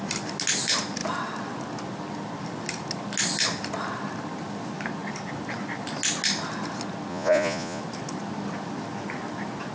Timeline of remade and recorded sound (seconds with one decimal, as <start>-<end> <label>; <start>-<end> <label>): 0.0-7.1 recorded; 7.1-7.8 remade; 7.8-9.7 recorded